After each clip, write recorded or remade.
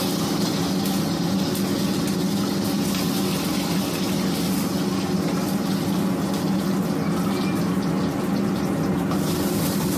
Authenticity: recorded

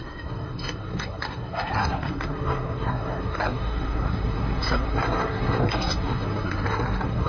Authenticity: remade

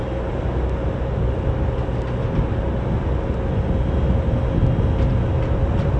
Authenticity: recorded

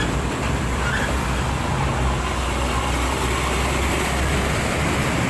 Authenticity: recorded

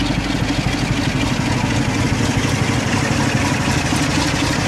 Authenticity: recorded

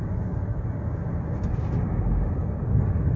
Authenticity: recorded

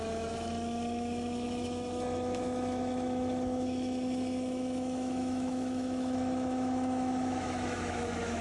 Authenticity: remade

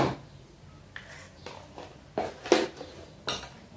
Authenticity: recorded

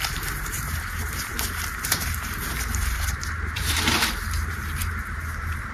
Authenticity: remade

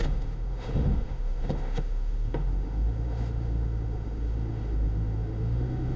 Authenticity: remade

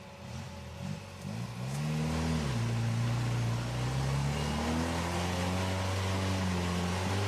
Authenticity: recorded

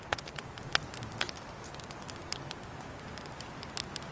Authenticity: recorded